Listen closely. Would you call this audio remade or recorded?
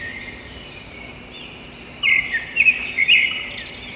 remade